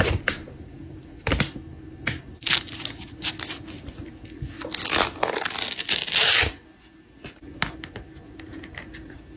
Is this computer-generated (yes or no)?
no